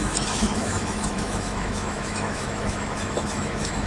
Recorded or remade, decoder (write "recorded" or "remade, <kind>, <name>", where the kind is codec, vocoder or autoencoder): remade, autoencoder, DAC-VAE